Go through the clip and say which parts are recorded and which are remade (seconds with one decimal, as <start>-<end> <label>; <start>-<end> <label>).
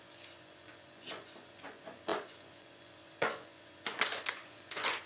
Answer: 0.0-5.1 remade